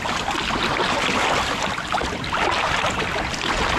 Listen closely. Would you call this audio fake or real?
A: real